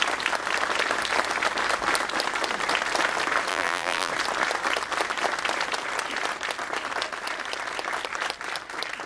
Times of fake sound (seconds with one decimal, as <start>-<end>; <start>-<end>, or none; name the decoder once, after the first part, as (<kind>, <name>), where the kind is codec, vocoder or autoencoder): 3.5-4.1 (vocoder, BigVGAN v2)